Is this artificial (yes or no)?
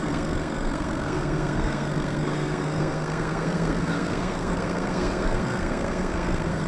yes